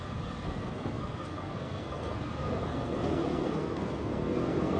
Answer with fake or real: fake